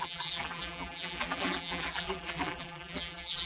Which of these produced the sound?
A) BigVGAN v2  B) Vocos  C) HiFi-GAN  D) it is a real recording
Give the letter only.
A